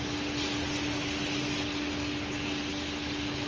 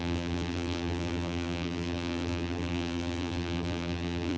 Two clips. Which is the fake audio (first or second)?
second